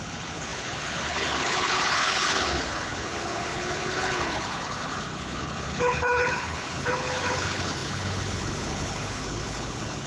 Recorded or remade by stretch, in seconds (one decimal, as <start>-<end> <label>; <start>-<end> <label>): 0.0-10.1 remade